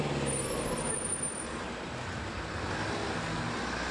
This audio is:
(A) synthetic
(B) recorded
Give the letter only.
B